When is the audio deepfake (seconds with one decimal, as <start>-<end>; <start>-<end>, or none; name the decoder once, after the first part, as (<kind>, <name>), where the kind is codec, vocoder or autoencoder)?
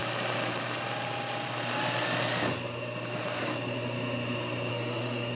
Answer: 4.7-5.3 (autoencoder, DAC-VAE)